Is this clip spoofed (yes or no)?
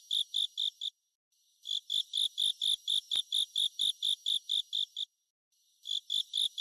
no